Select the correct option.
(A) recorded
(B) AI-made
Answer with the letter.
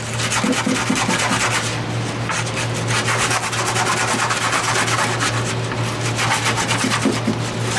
A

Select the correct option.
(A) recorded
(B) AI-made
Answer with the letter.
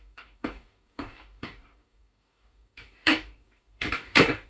B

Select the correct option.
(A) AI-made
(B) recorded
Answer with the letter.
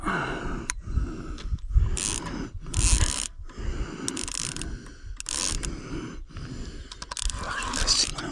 B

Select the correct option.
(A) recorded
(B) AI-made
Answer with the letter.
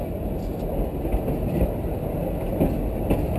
A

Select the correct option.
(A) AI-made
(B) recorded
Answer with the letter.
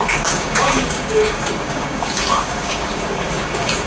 A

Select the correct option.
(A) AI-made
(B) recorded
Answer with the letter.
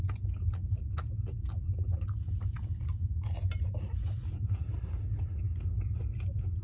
B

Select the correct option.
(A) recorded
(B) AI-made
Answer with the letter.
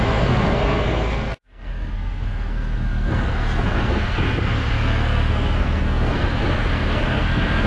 B